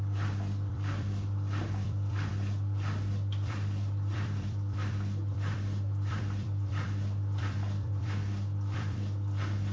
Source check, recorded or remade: remade